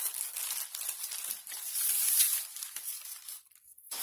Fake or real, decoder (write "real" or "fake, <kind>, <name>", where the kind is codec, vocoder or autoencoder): real